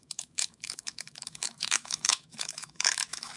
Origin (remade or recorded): remade